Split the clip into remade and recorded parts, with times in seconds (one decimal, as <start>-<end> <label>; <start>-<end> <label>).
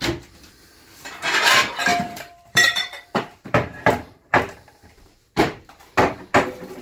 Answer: 0.0-1.9 recorded; 1.9-5.1 remade; 5.1-6.8 recorded